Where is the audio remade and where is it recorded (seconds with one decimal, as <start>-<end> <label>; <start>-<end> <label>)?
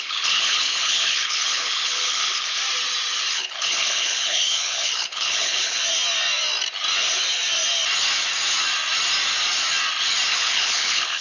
0.0-2.6 remade; 2.6-3.3 recorded; 3.3-5.8 remade; 5.8-10.3 recorded; 10.3-11.2 remade